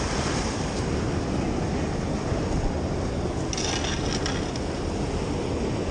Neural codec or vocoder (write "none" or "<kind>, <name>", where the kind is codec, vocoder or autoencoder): none